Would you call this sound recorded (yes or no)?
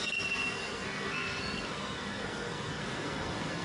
no